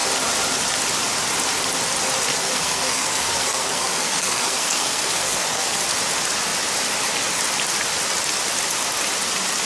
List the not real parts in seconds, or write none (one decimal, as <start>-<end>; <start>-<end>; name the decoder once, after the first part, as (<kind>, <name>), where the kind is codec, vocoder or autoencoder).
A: 2.3-5.8 (codec, SNAC)